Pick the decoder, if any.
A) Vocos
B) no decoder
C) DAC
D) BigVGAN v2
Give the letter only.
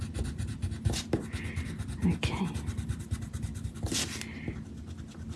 B